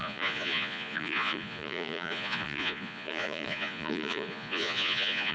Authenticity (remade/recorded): remade